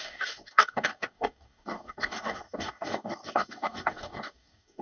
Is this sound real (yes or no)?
no